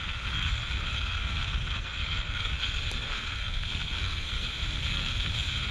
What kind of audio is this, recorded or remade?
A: remade